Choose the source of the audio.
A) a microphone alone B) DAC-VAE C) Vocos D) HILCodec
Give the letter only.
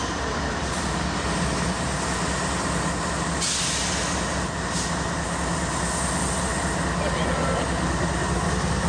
A